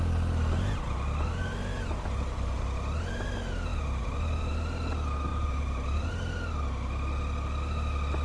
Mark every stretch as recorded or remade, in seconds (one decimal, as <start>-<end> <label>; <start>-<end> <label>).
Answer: 0.0-3.7 recorded; 3.7-4.5 remade; 4.5-5.3 recorded; 5.3-6.1 remade; 6.1-8.2 recorded